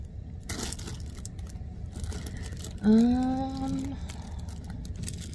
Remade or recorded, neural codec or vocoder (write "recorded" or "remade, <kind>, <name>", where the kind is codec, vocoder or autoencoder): recorded